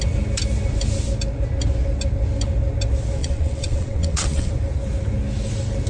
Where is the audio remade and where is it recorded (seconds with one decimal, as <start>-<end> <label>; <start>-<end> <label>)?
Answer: 0.0-3.2 recorded; 3.2-4.5 remade; 4.5-5.9 recorded